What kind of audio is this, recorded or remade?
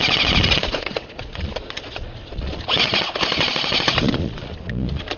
remade